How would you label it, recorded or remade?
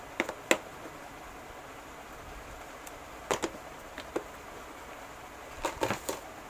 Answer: recorded